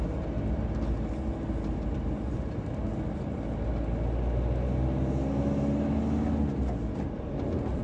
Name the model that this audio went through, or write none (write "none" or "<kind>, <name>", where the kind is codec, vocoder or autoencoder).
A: none